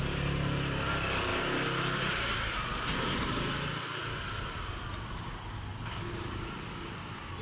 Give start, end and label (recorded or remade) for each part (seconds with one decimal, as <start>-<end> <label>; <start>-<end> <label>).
0.0-5.7 recorded; 5.7-6.4 remade; 6.4-7.4 recorded